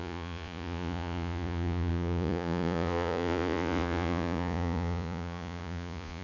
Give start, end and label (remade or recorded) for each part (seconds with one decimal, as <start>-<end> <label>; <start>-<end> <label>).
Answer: 0.0-6.2 remade